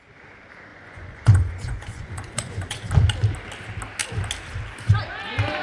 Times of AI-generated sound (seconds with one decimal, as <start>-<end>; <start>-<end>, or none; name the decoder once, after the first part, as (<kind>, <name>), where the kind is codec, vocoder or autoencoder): 0.7-2.8 (vocoder, Vocos)

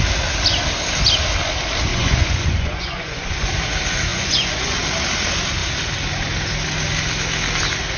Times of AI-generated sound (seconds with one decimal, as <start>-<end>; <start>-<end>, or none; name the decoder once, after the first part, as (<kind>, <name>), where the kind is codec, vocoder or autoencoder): 1.9-3.5 (vocoder, Vocos); 4.1-4.8

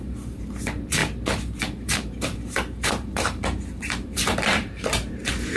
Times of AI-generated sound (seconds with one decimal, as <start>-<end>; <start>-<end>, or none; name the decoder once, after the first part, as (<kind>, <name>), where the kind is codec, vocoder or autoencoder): 0.0-1.0 (vocoder, BigVGAN v2); 1.6-5.6

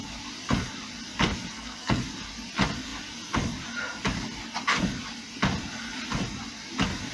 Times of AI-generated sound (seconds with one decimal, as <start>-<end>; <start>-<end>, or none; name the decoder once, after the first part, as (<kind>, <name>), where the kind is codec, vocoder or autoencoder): 1.5-2.0 (codec, SNAC)

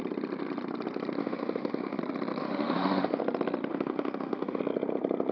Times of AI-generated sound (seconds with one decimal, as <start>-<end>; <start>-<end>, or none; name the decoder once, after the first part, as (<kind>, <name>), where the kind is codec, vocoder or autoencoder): 1.2-2.0 (autoencoder, DAC-VAE); 2.4-3.2; 3.7-4.6

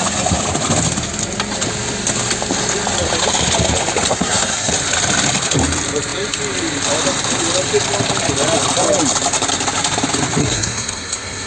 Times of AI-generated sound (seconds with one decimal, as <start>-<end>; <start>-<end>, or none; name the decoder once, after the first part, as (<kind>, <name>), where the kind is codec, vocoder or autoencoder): 4.1-4.7 (codec, SNAC); 10.4-11.5

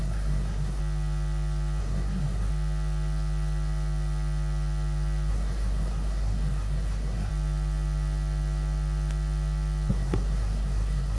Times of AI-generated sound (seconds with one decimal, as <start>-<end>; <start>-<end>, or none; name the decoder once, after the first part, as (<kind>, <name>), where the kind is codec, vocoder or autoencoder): 0.0-0.8 (codec, SNAC); 1.8-2.5; 5.3-7.3; 9.9-11.2